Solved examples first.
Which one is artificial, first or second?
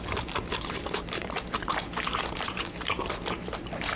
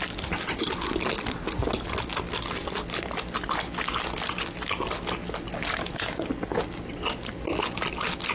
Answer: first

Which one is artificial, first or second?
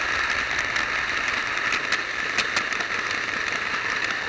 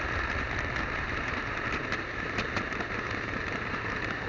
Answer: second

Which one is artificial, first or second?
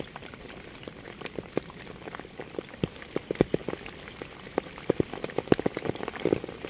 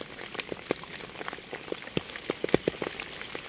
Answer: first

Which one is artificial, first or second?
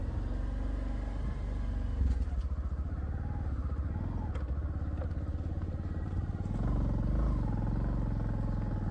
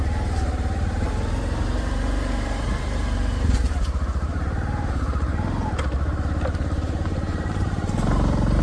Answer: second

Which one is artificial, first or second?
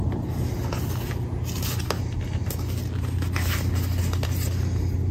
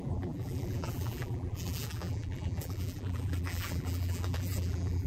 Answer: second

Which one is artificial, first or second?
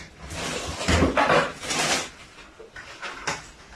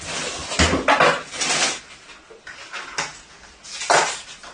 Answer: first